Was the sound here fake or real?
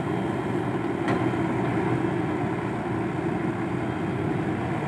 real